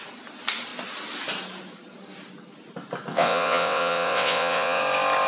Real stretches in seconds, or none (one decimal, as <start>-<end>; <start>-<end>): 0.0-3.1; 4.8-5.3